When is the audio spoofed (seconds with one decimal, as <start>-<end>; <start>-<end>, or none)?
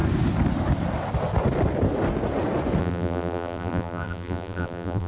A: 2.8-5.1